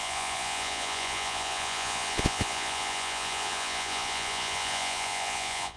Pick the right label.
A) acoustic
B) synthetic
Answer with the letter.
B